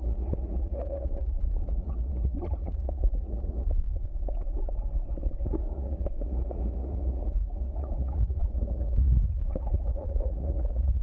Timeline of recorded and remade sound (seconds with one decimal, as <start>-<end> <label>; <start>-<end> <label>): 0.0-3.8 remade; 3.8-5.4 recorded; 5.4-11.0 remade